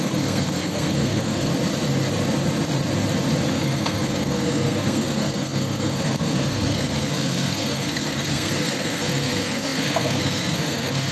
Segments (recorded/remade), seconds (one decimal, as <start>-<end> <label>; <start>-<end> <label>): 0.0-1.5 remade; 1.5-3.5 recorded; 3.5-11.1 remade